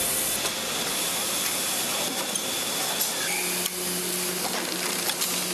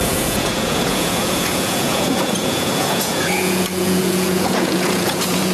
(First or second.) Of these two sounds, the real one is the first